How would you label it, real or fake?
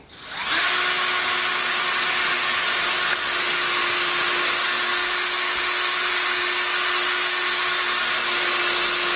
real